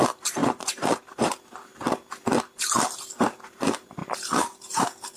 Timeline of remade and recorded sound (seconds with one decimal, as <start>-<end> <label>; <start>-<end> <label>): 0.0-1.7 remade; 1.7-2.8 recorded; 2.8-4.0 remade; 4.0-5.2 recorded